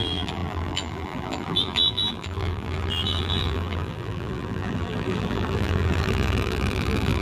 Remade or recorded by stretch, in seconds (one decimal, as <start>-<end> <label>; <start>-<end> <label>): 0.0-7.2 remade

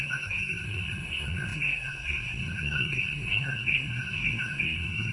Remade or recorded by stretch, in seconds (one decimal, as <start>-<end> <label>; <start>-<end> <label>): 0.0-5.1 remade